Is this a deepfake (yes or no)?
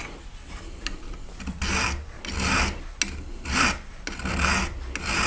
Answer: no